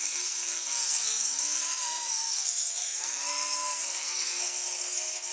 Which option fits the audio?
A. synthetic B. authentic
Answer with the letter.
A